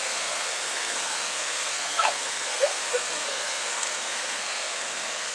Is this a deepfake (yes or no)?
yes